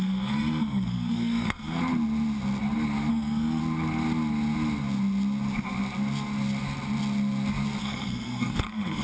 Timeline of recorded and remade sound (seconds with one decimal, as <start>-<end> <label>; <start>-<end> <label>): 0.0-1.8 remade; 1.8-3.1 recorded; 3.1-3.6 remade; 3.6-7.8 recorded; 7.8-9.0 remade